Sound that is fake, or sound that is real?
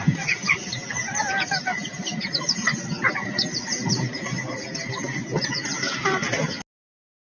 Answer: real